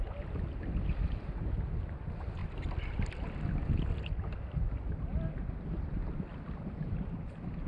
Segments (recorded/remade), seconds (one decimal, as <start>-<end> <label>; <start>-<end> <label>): 0.0-7.7 recorded